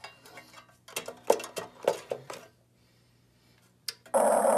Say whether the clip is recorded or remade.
recorded